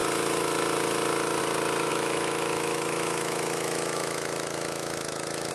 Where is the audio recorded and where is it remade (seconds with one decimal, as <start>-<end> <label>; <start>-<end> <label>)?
0.0-1.9 recorded; 1.9-5.5 remade